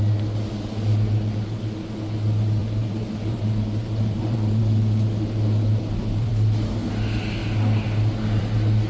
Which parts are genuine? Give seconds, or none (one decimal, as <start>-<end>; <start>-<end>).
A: 0.0-2.6; 4.6-5.7; 6.3-8.9